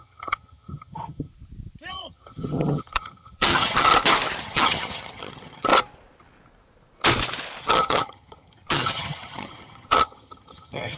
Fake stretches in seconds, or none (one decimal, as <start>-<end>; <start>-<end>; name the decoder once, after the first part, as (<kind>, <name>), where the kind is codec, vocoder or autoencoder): 0.0-1.3 (vocoder, HiFi-GAN); 1.9-3.9; 4.4-5.7; 7.6-11.0